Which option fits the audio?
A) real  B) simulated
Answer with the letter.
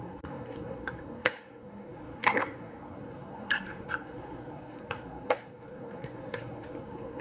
B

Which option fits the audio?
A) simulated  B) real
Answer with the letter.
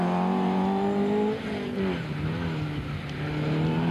B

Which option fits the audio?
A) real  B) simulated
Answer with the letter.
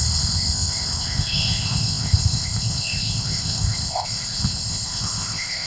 B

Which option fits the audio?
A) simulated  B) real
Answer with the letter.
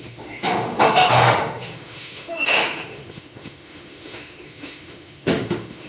A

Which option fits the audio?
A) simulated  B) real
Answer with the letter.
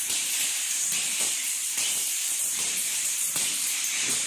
A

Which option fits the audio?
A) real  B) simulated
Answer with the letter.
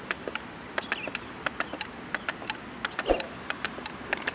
A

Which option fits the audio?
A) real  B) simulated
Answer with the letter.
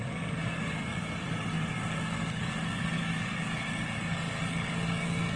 B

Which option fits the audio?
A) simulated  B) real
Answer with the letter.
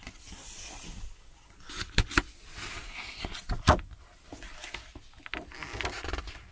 B